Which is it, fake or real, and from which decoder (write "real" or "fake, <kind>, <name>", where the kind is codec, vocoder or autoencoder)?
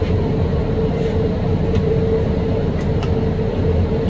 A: real